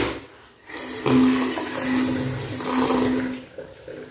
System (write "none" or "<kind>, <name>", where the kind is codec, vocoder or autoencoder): none